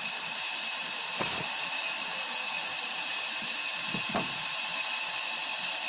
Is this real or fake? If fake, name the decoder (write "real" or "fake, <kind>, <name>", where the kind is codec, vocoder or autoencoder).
fake, vocoder, BigVGAN v2